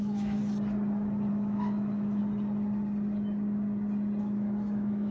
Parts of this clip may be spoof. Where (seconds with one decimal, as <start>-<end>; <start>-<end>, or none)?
0.0-0.4; 1.3-2.2; 4.2-5.1